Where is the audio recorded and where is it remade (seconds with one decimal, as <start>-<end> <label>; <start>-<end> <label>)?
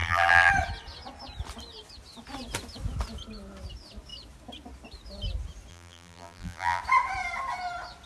0.0-0.5 remade; 0.5-5.7 recorded; 5.7-6.8 remade; 6.8-8.1 recorded